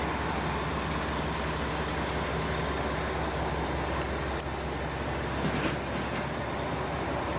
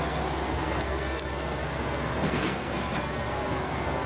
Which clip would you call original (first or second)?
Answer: first